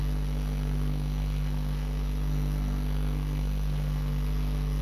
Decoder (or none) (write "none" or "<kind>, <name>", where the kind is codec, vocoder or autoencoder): codec, SNAC